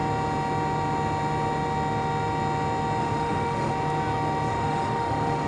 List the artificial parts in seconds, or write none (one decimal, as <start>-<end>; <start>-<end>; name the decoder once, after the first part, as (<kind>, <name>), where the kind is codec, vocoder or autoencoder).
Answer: 3.0-3.7 (autoencoder, DAC-VAE); 4.5-5.5